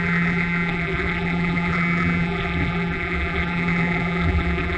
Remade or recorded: remade